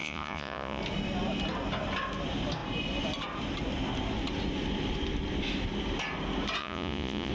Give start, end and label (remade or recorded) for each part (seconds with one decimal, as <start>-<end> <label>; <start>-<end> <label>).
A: 0.0-0.8 remade; 0.8-6.6 recorded; 6.6-7.3 remade